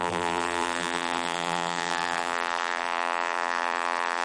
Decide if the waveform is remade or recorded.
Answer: remade